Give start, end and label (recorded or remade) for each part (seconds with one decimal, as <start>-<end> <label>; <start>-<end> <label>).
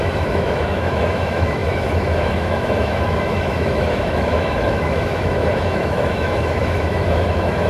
0.0-7.7 remade